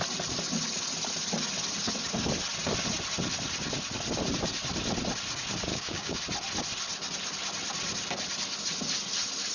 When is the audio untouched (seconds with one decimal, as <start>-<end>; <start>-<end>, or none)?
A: 0.0-5.7; 6.2-9.5